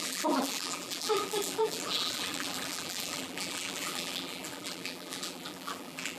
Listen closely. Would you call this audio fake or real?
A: fake